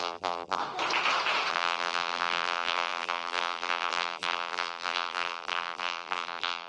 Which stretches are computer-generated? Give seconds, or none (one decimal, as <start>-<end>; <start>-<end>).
0.0-0.6; 1.5-6.7